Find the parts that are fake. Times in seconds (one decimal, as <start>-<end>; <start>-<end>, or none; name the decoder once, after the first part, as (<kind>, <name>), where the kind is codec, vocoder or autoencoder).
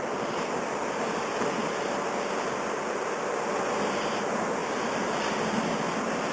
none